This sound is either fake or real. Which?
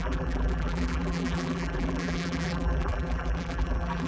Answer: fake